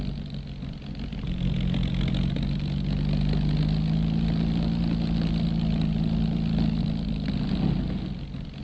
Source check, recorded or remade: recorded